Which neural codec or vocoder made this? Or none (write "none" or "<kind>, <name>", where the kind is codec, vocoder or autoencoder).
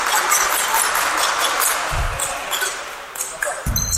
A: none